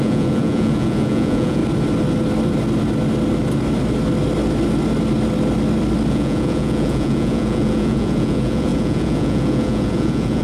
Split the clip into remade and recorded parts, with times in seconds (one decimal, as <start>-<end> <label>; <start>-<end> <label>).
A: 0.0-1.6 remade; 1.6-6.1 recorded; 6.1-10.4 remade